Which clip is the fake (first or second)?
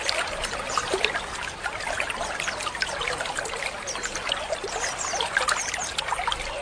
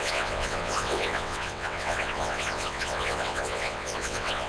second